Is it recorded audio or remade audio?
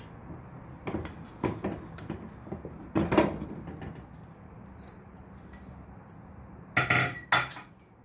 recorded